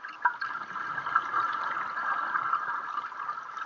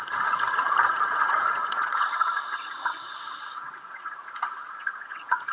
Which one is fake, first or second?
second